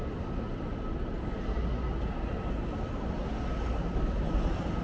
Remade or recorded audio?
recorded